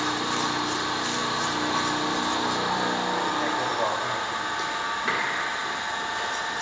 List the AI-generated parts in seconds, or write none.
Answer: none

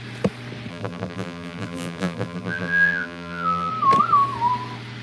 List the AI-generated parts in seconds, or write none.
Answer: 0.7-3.7 (vocoder, BigVGAN v2)

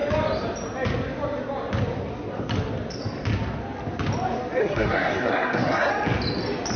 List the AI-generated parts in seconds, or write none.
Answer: 4.6-5.9 (codec, SNAC)

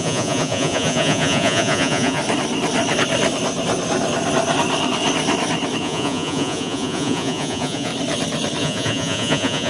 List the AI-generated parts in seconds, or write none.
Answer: 0.0-2.2 (vocoder, Vocos); 5.8-7.9; 8.6-9.7

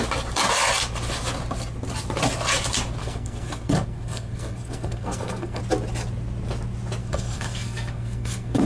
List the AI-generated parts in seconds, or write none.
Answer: 3.0-5.6 (codec, SNAC); 7.0-8.7

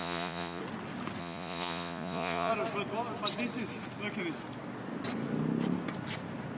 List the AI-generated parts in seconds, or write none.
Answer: 0.0-0.6 (vocoder, Vocos); 1.2-2.5

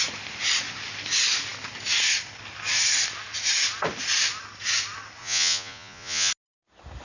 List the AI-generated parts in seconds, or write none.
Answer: 5.2-6.3 (vocoder, Vocos)

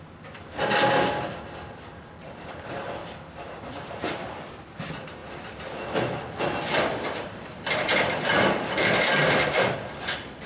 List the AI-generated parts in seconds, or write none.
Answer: 0.0-3.0 (vocoder, BigVGAN v2); 3.7-5.2; 6.6-10.5